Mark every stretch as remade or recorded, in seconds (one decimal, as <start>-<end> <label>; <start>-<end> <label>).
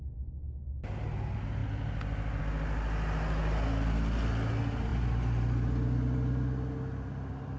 0.0-1.6 recorded; 1.6-2.4 remade; 2.4-7.6 recorded